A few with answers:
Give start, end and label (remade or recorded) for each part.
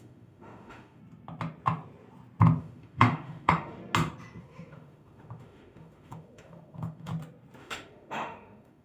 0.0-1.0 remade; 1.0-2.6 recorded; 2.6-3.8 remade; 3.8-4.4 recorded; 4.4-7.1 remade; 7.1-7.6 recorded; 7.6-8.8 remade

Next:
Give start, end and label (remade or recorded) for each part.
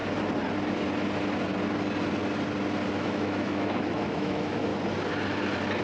0.0-2.9 recorded; 2.9-4.7 remade; 4.7-5.8 recorded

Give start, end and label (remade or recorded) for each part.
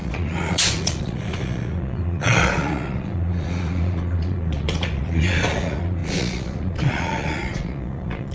0.0-8.3 remade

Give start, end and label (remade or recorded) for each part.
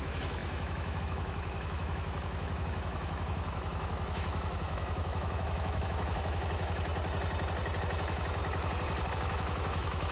0.0-6.9 remade; 6.9-7.8 recorded; 7.8-8.4 remade; 8.4-9.1 recorded; 9.1-10.1 remade